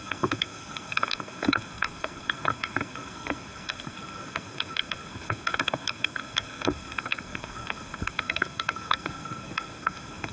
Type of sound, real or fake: fake